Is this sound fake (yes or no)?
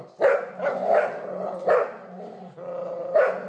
no